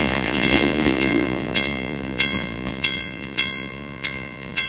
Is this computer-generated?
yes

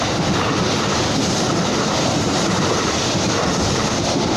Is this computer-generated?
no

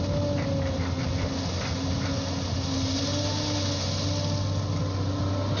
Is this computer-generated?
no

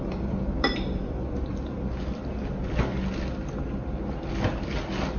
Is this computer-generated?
no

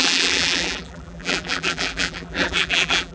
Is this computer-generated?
yes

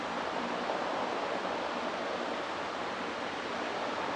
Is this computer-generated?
no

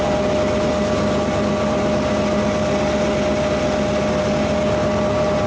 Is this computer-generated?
no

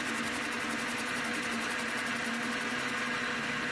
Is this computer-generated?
no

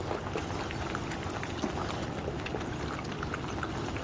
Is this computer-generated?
no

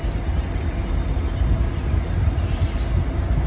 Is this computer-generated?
no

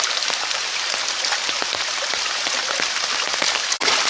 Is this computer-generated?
no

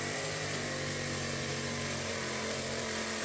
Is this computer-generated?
yes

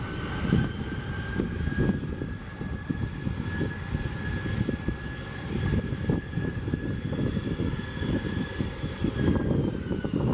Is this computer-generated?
no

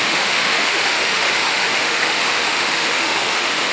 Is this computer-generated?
yes